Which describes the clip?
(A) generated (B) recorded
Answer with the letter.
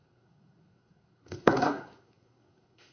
A